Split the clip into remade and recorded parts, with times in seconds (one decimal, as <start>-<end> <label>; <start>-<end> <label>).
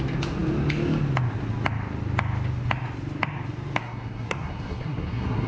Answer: 0.0-3.8 recorded; 3.8-5.5 remade